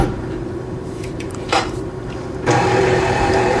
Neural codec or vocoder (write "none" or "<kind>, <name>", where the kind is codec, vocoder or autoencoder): vocoder, BigVGAN v2